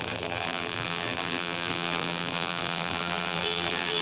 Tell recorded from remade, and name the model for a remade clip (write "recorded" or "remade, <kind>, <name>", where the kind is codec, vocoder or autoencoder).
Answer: remade, vocoder, BigVGAN v2